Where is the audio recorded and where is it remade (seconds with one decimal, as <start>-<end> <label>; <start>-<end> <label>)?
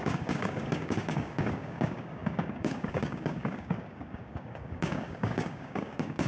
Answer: 0.0-6.3 remade